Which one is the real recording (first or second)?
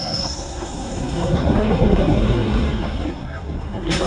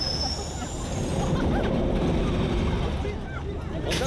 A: second